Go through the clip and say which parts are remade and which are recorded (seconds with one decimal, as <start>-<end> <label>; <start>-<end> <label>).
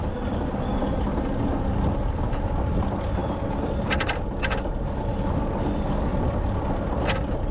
0.0-6.1 recorded; 6.1-6.7 remade; 6.7-7.5 recorded